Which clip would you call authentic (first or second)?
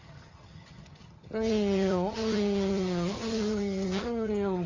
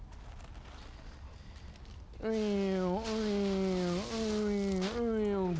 second